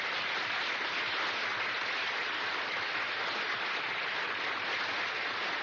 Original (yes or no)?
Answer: yes